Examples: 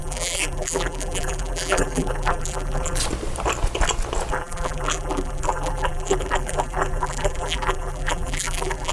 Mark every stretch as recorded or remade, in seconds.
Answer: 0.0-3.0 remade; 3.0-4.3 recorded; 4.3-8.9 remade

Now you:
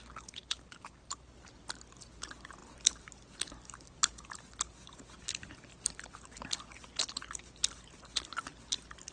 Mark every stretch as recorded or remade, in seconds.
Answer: 0.0-0.4 recorded; 0.4-1.5 remade; 1.5-9.1 recorded